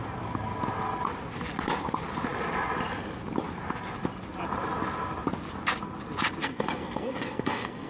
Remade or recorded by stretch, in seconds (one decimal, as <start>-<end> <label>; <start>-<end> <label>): 0.0-6.4 recorded; 6.4-7.9 remade